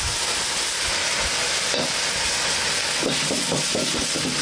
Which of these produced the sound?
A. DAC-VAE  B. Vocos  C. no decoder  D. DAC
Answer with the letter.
C